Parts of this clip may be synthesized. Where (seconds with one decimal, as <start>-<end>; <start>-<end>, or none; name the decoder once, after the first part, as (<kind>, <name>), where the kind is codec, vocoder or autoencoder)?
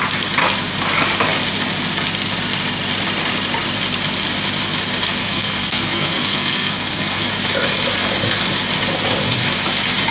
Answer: 5.2-7.3 (codec, SNAC)